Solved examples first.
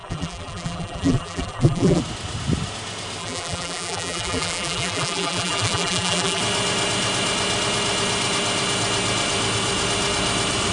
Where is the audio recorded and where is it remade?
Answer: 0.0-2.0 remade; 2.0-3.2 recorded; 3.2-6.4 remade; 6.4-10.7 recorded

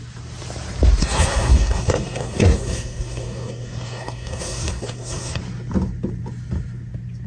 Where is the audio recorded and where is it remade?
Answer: 0.0-1.0 recorded; 1.0-5.4 remade; 5.4-7.3 recorded